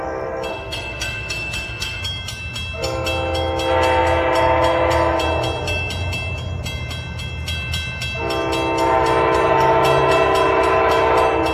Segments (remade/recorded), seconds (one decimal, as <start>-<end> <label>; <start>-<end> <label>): 0.0-0.5 recorded; 0.5-2.0 remade; 2.0-11.5 recorded